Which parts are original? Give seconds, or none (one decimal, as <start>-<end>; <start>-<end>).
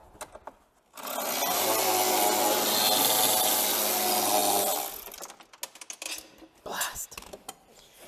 0.0-8.1